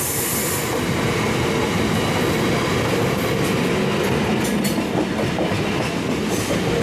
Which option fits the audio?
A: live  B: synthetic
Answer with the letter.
A